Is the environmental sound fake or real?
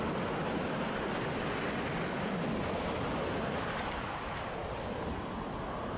real